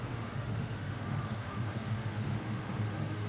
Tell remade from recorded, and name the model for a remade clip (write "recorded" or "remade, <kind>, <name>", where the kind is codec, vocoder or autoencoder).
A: remade, autoencoder, DAC-VAE